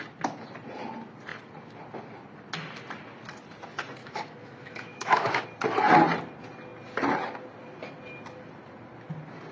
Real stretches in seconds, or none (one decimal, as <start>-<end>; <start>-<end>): 0.0-4.0; 5.4-9.5